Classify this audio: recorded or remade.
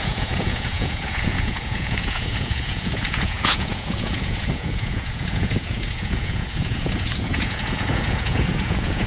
remade